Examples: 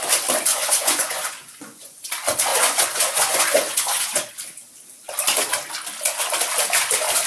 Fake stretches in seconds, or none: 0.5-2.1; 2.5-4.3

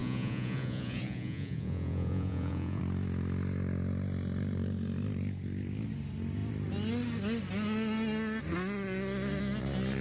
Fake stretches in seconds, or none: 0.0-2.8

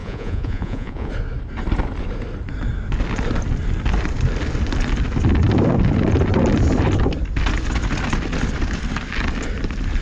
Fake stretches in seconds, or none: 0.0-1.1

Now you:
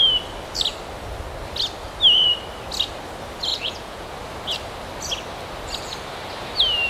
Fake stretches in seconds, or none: 3.5-4.1

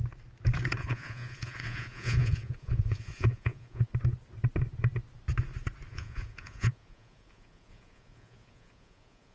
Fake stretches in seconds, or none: 0.8-3.9; 5.9-9.3